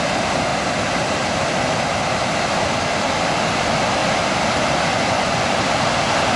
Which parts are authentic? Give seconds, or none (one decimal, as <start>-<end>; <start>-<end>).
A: 0.0-4.9; 5.5-6.4